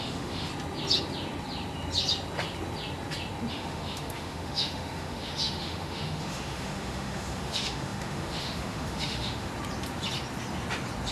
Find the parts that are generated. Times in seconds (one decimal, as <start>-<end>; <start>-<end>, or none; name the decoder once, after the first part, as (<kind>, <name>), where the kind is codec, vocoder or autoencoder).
0.0-0.5 (autoencoder, DAC-VAE); 3.5-9.5